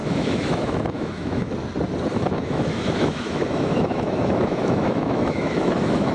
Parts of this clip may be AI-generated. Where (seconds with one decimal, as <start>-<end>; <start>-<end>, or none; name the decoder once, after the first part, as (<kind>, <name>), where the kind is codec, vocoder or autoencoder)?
0.0-1.5 (autoencoder, DAC-VAE); 2.1-6.1